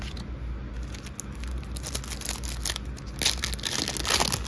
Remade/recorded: recorded